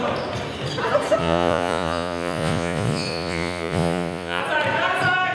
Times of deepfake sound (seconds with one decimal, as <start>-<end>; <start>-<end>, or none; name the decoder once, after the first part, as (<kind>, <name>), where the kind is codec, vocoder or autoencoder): 1.2-4.4 (vocoder, Vocos)